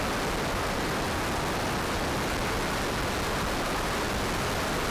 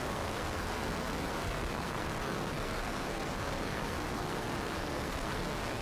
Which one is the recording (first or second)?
first